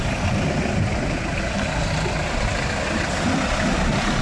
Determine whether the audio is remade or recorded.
recorded